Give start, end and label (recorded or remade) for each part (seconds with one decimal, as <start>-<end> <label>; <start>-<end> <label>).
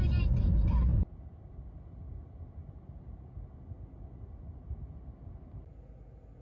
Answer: 0.0-6.4 recorded